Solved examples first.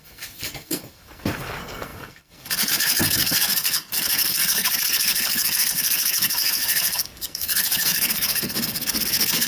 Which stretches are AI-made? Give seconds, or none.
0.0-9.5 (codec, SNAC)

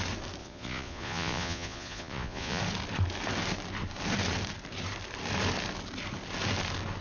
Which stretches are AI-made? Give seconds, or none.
0.4-2.6 (vocoder, Vocos)